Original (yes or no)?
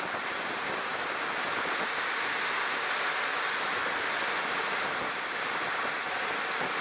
yes